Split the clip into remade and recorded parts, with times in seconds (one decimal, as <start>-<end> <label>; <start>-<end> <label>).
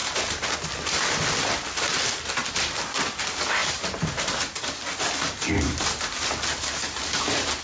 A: 0.0-7.6 recorded